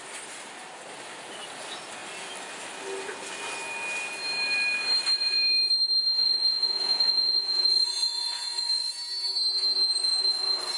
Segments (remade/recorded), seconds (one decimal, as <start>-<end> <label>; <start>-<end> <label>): 0.0-6.2 recorded; 6.2-8.9 remade; 8.9-10.8 recorded

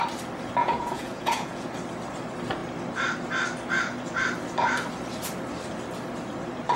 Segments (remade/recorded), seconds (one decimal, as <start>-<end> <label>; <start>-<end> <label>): 0.0-0.6 recorded; 0.6-1.7 remade; 1.7-6.8 recorded

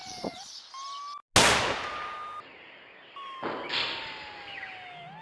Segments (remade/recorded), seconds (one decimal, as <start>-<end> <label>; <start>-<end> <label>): 0.0-0.6 remade; 0.6-5.2 recorded

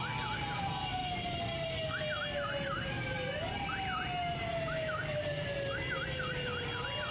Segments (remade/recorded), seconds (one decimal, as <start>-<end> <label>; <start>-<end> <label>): 0.0-7.1 recorded

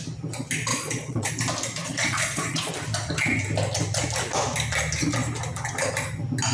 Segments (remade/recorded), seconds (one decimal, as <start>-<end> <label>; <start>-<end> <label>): 0.0-0.7 recorded; 0.7-1.3 remade; 1.3-1.8 recorded; 1.8-2.7 remade; 2.7-6.5 recorded

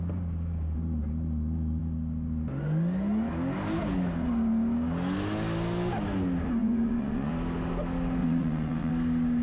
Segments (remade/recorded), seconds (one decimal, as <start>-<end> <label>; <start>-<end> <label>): 0.0-6.6 recorded; 6.6-7.3 remade; 7.3-8.2 recorded; 8.2-8.9 remade; 8.9-9.4 recorded